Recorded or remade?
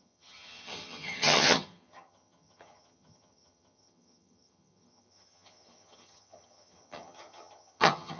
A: remade